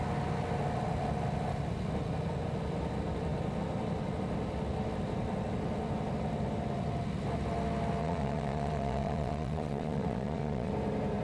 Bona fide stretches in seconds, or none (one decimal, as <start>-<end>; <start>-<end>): 0.0-8.0; 10.7-11.2